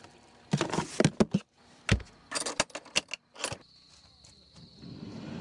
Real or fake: real